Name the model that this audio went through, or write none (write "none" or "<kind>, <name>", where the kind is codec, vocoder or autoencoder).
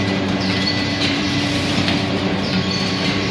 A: vocoder, BigVGAN v2